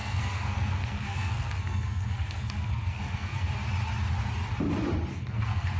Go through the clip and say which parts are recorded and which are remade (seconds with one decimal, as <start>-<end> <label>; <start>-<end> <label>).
0.0-3.5 remade; 3.5-5.1 recorded; 5.1-5.8 remade